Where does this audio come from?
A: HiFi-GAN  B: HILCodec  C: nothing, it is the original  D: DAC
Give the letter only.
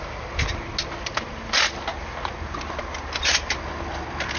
C